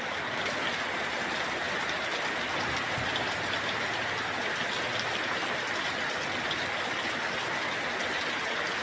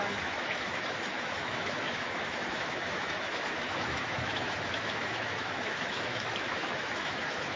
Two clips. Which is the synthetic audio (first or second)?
second